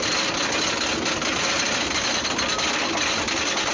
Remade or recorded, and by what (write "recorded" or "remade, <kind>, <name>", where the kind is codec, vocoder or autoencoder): recorded